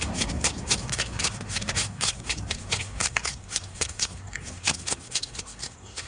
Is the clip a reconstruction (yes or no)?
yes